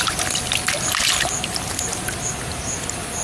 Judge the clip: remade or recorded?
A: recorded